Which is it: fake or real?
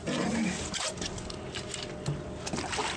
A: real